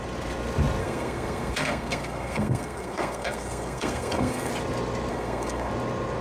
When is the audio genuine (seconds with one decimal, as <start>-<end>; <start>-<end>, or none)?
0.0-0.8; 4.5-5.1; 5.7-6.2